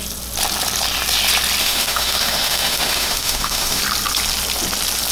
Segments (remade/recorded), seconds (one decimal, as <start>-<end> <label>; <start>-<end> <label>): 0.0-1.6 recorded; 1.6-3.8 remade; 3.8-5.1 recorded